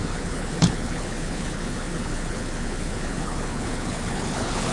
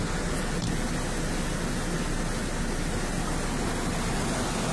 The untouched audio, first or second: second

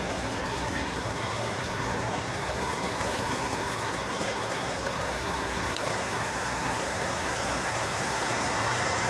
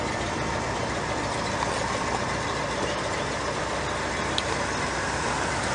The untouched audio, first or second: second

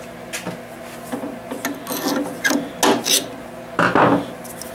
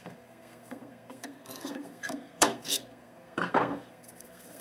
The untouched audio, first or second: first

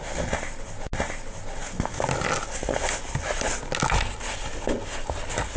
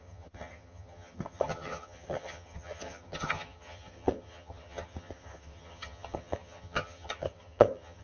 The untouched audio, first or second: first